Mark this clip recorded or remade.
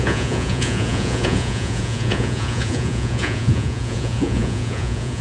remade